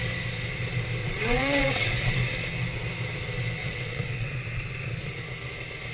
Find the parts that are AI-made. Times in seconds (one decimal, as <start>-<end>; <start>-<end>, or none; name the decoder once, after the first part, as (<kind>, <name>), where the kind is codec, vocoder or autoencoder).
1.0-1.9 (vocoder, WaveNeXt); 3.6-4.3